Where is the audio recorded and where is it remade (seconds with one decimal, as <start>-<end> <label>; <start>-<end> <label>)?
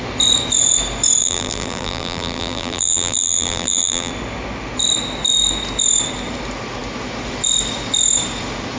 0.0-1.2 recorded; 1.2-4.1 remade; 4.1-8.8 recorded